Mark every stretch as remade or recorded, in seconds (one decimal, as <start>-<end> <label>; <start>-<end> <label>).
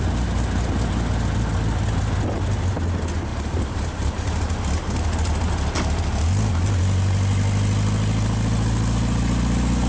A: 0.0-3.3 recorded; 3.3-4.1 remade; 4.1-9.9 recorded